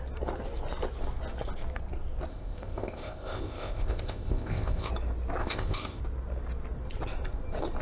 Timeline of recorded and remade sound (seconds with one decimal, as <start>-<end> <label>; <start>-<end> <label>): 0.0-2.3 recorded; 2.3-4.9 remade; 4.9-5.4 recorded; 5.4-6.0 remade; 6.0-7.8 recorded